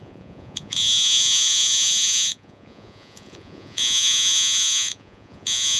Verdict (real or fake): fake